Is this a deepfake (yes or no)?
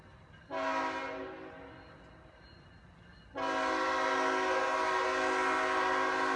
no